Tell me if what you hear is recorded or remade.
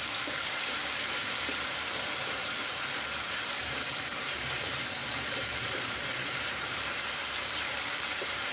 remade